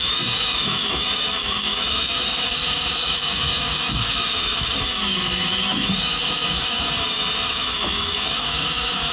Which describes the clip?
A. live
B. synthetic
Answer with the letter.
B